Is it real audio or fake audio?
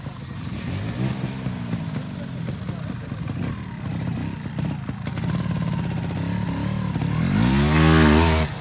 real